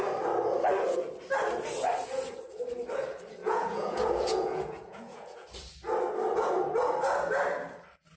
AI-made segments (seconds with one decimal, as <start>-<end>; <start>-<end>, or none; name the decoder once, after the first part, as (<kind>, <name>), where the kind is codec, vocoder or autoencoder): 3.4-5.5 (vocoder, Vocos)